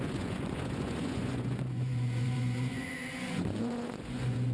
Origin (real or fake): fake